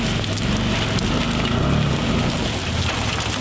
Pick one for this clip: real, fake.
real